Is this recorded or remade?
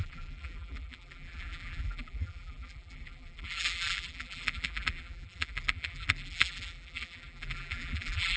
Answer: remade